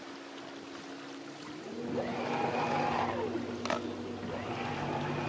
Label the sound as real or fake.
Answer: real